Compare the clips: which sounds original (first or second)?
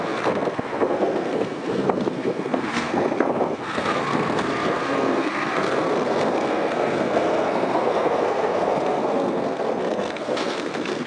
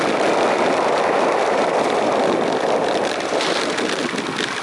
second